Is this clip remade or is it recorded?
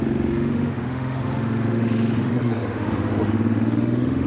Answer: remade